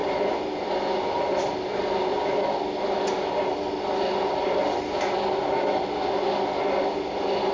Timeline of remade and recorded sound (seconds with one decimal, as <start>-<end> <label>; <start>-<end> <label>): 0.0-0.7 remade; 0.7-7.5 recorded